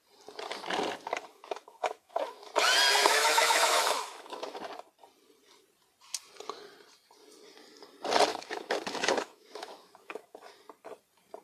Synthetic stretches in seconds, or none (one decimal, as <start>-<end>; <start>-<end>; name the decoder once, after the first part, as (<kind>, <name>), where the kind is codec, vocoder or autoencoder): 1.3-2.5 (autoencoder, DAC-VAE); 3.0-4.6; 8.3-10.4